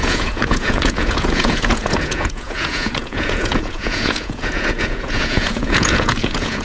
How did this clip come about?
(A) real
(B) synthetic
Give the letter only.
B